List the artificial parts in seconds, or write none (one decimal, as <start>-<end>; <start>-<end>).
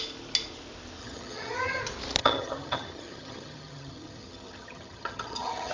1.0-1.8; 2.2-5.7